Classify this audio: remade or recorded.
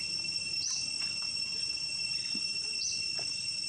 recorded